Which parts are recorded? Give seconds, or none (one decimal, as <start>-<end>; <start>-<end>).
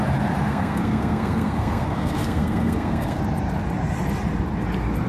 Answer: 0.0-0.5; 3.2-5.1